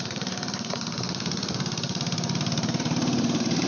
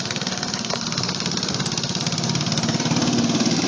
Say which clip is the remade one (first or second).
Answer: first